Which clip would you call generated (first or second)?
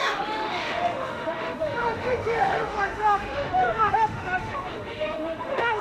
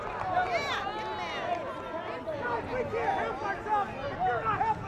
first